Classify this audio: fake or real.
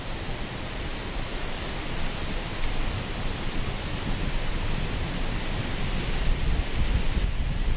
real